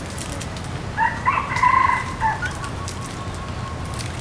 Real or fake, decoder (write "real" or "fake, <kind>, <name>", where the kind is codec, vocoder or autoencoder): real